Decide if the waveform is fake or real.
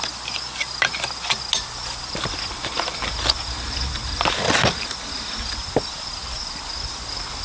real